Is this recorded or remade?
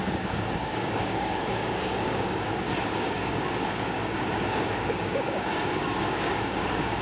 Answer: remade